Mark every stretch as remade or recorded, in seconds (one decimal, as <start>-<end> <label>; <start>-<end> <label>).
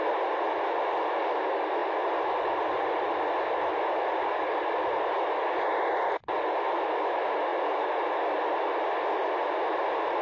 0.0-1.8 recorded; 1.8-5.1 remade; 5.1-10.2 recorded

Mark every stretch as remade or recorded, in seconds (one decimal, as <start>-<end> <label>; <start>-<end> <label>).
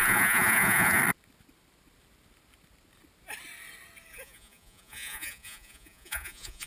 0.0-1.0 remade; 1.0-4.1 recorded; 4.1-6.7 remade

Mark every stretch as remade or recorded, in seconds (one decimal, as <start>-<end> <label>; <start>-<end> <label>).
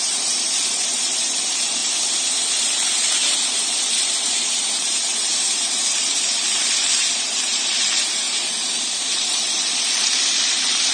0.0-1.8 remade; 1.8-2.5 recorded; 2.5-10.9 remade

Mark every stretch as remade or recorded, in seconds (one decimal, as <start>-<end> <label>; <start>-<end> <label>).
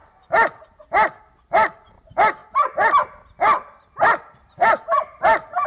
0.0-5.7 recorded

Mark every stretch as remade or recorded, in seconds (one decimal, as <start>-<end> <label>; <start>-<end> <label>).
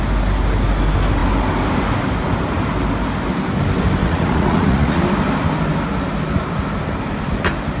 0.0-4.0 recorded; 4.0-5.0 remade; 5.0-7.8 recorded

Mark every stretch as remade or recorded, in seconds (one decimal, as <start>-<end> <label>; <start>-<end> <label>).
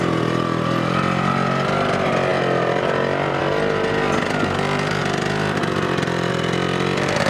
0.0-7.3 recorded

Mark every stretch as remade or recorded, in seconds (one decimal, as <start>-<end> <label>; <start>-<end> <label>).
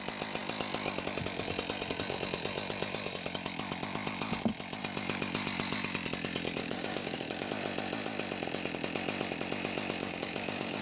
0.0-6.6 recorded; 6.6-7.5 remade; 7.5-10.0 recorded; 10.0-10.8 remade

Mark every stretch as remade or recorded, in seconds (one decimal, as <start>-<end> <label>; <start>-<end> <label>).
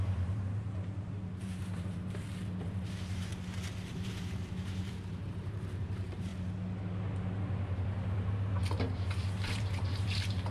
0.0-3.3 remade; 3.3-3.9 recorded; 3.9-6.3 remade; 6.3-9.2 recorded; 9.2-10.5 remade